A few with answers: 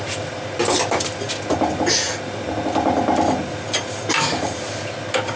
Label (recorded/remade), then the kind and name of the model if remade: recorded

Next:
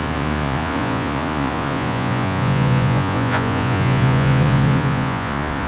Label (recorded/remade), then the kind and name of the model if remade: remade, vocoder, Vocos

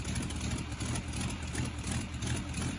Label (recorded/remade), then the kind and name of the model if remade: recorded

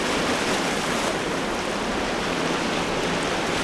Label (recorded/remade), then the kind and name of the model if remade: recorded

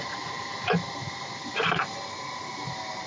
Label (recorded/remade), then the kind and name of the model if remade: remade, vocoder, BigVGAN v2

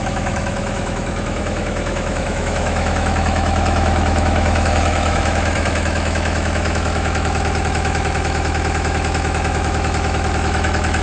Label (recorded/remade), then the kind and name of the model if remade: remade, autoencoder, DAC-VAE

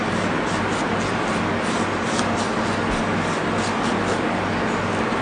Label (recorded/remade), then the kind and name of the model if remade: recorded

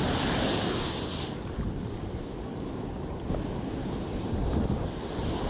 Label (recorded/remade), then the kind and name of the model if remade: recorded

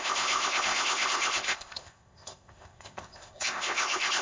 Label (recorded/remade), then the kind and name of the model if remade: remade, codec, ZipCodec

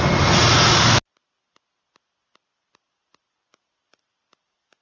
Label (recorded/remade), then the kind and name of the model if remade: recorded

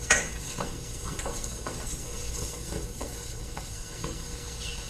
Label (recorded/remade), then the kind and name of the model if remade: remade, codec, SNAC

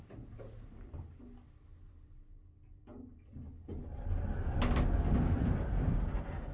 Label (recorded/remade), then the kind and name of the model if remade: recorded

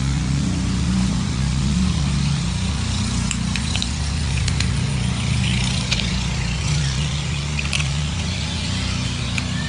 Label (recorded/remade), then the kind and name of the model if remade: remade, vocoder, Vocos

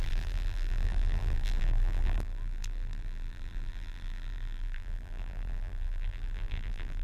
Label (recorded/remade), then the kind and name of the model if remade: remade, vocoder, BigVGAN v2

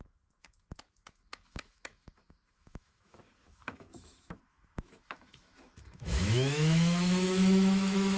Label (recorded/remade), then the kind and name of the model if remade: remade, autoencoder, DAC-VAE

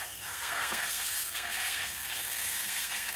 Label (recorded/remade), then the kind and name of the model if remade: remade, codec, SNAC